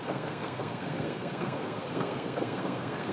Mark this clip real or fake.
fake